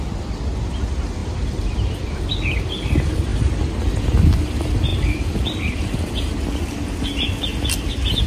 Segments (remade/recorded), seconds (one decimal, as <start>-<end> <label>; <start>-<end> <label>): 0.0-1.2 recorded; 1.2-2.3 remade; 2.3-4.9 recorded; 4.9-6.0 remade; 6.0-8.3 recorded